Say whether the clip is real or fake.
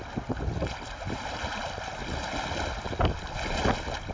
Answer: real